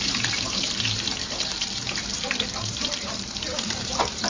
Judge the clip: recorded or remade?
remade